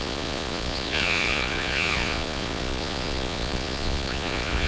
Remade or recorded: remade